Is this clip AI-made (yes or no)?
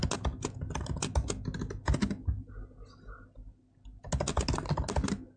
no